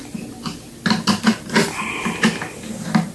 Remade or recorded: recorded